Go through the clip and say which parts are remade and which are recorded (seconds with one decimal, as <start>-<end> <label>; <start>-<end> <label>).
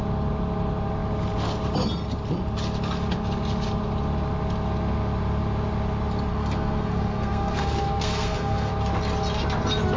0.0-6.3 recorded; 6.3-8.7 remade; 8.7-10.0 recorded